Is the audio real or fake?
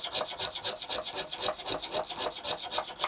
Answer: real